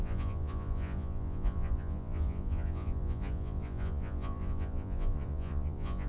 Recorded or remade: remade